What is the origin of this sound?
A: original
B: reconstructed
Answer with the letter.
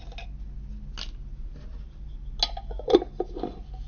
A